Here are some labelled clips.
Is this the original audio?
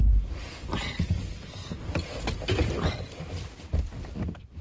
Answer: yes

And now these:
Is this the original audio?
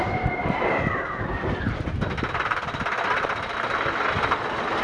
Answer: yes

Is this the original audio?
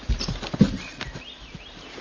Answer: yes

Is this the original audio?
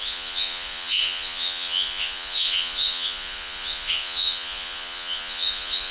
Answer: no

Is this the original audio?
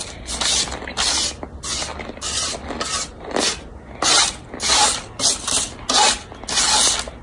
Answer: yes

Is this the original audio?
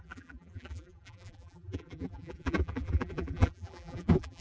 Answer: no